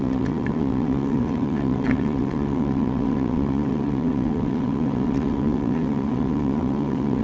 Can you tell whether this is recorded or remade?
remade